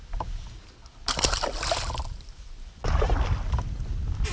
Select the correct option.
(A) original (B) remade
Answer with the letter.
A